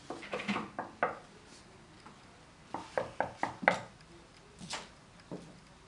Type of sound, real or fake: real